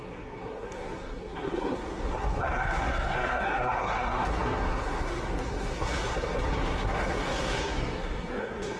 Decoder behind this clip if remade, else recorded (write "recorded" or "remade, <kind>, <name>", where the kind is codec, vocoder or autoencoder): remade, codec, SNAC